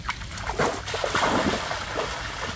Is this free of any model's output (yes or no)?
yes